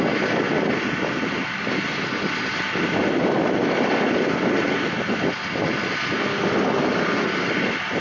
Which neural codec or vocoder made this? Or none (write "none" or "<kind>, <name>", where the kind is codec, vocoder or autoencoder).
none